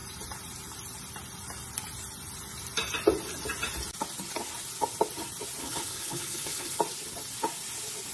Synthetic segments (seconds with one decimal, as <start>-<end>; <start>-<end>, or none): 5.6-6.8